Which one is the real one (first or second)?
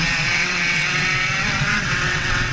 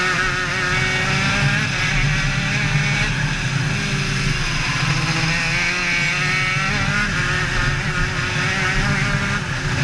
second